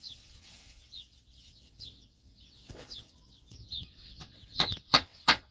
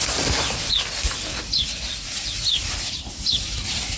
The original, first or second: second